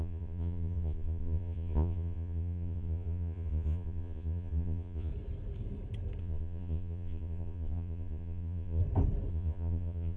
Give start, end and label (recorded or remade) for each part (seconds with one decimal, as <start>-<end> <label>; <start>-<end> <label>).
0.0-5.1 remade; 5.1-6.2 recorded; 6.2-8.8 remade; 8.8-9.3 recorded; 9.3-10.2 remade